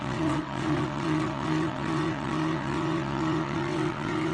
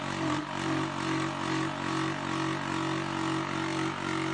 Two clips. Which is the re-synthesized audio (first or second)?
first